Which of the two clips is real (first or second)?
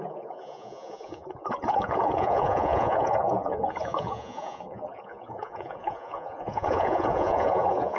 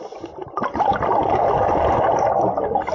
second